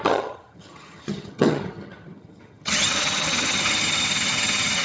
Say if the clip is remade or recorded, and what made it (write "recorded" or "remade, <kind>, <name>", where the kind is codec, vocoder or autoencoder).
remade, vocoder, HiFi-GAN